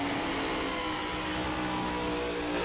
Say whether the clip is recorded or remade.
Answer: recorded